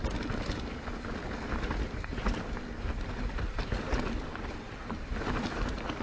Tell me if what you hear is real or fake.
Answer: real